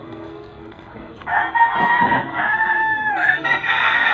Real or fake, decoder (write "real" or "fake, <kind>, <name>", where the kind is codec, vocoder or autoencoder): fake, codec, SNAC